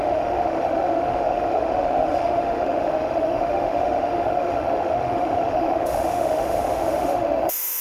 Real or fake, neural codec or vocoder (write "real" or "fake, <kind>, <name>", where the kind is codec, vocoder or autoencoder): fake, autoencoder, DAC-VAE